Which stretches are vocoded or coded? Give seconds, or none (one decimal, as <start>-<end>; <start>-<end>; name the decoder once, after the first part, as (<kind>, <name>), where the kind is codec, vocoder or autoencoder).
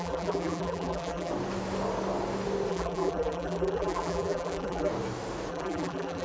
0.0-1.3 (vocoder, BigVGAN v2); 2.7-4.9; 5.5-6.2